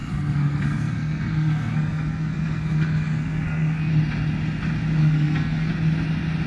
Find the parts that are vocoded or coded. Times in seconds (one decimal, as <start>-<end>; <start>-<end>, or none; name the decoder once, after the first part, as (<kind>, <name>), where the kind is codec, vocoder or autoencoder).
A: 0.0-3.9 (codec, SNAC); 5.0-5.7